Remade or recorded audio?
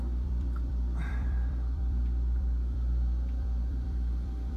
remade